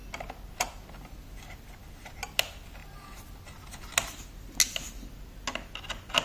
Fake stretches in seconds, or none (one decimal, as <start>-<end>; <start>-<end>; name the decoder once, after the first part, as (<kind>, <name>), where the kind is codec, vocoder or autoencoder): none